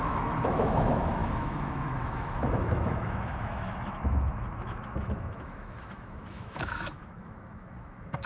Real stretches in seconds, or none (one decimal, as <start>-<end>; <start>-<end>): none